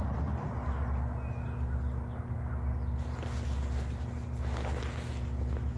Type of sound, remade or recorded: recorded